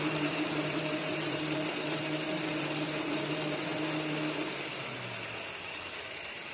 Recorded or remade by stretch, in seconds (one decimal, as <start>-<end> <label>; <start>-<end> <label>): 0.0-3.7 remade; 3.7-6.0 recorded; 6.0-6.5 remade